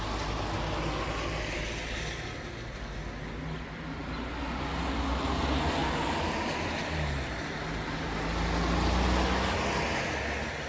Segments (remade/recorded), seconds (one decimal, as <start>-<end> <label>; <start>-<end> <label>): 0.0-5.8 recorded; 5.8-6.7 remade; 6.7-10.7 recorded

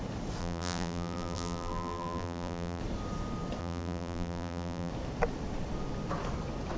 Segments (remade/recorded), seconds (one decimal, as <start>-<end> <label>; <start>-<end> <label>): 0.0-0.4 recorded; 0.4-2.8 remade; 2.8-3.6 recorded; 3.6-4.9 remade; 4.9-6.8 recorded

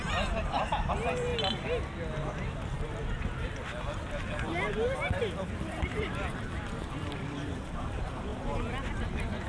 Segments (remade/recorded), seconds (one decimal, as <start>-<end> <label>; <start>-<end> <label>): 0.0-1.3 remade; 1.3-5.7 recorded; 5.7-8.3 remade; 8.3-8.9 recorded; 8.9-9.5 remade